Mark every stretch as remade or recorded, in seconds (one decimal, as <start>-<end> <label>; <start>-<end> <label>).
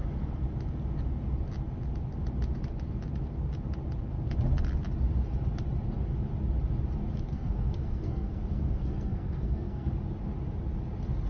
0.0-7.3 recorded; 7.3-9.9 remade; 9.9-11.3 recorded